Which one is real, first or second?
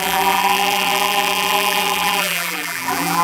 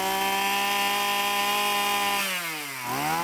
second